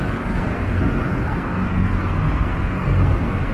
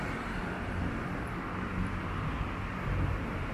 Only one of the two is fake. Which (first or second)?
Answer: first